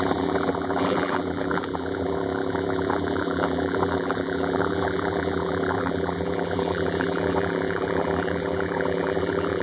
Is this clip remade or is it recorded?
remade